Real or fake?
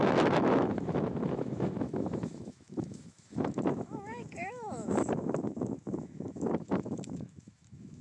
fake